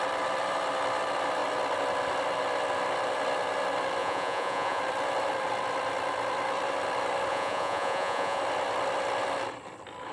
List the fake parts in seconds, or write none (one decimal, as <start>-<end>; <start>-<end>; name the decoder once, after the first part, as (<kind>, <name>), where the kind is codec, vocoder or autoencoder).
4.0-4.8 (vocoder, Vocos); 7.3-8.4